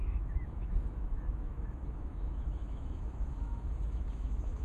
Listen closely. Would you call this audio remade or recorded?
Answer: remade